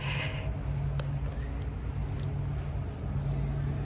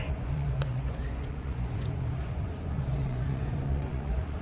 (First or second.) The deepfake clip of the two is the second